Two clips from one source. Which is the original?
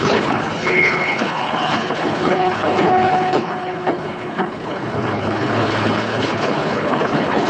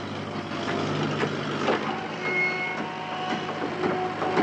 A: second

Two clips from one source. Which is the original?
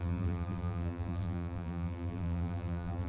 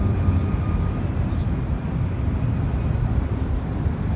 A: second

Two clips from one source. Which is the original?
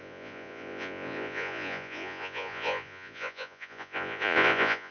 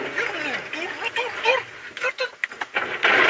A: second